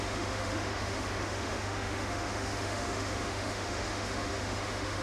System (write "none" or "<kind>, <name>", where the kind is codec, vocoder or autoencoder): autoencoder, DAC-VAE